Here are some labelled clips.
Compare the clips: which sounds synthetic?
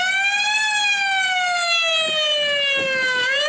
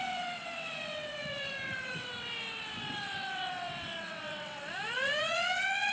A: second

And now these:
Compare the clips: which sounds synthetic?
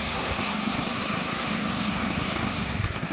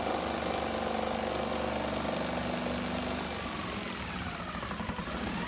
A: first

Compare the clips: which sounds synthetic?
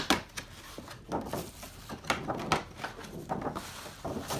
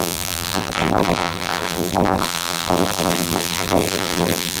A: second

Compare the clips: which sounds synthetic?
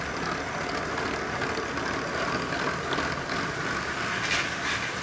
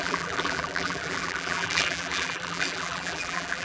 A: second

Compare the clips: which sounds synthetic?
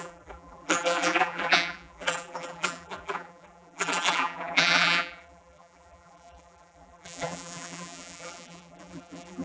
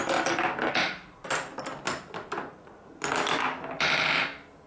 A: first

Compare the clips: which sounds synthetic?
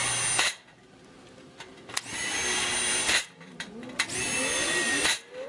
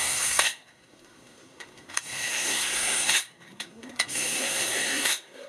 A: second